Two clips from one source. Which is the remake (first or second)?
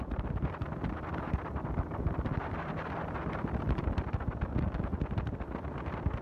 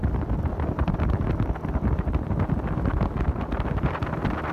first